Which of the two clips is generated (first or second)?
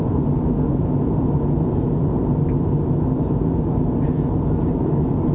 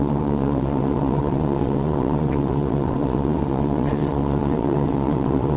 second